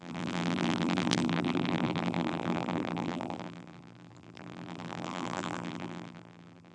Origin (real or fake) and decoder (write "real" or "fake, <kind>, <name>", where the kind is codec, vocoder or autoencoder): fake, vocoder, BigVGAN v2